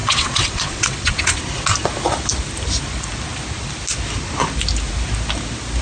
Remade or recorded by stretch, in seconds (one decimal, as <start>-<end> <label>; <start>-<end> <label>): 0.0-1.4 remade; 1.4-5.8 recorded